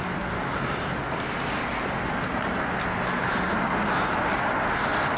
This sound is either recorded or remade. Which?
recorded